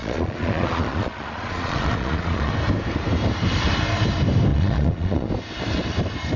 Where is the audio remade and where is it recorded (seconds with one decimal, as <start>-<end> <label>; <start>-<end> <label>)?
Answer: 0.0-2.5 remade; 2.5-4.5 recorded; 4.5-5.3 remade; 5.3-6.4 recorded